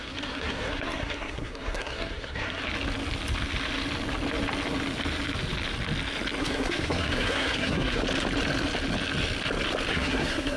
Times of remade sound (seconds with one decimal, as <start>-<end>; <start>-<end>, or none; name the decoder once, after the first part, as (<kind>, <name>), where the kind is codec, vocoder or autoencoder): 0.0-2.6 (codec, SNAC); 6.4-8.0; 9.9-10.6